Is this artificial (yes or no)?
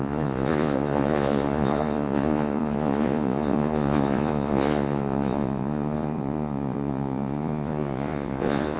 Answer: yes